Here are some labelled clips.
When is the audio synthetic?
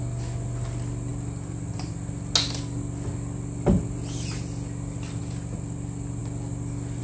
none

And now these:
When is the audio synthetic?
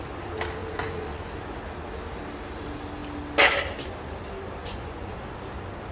0.6-1.6 (vocoder, Vocos); 4.6-5.2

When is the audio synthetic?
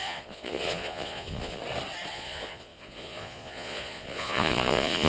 0.0-1.6 (vocoder, Vocos); 2.1-5.1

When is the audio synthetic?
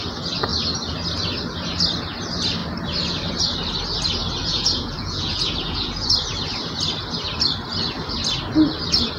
4.4-6.1 (vocoder, Vocos)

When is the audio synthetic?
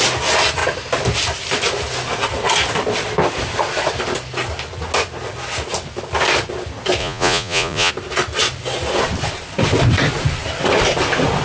7.0-7.9 (vocoder, Vocos)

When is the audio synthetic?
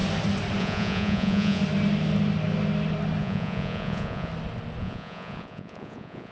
0.6-1.6 (vocoder, Vocos); 3.2-4.3; 4.8-6.3